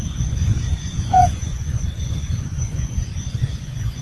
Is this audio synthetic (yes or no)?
yes